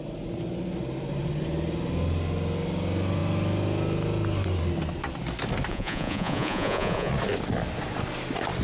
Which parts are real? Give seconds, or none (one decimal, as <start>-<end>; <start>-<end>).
0.0-5.7; 7.1-8.6